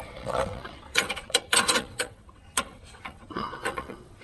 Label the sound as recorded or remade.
remade